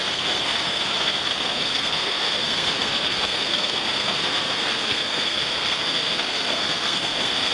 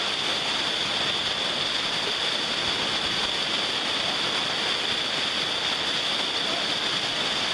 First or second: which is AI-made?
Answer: first